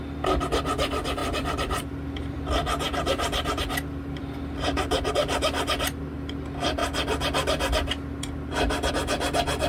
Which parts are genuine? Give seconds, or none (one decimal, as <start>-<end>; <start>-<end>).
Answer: 0.0-1.2; 5.1-9.7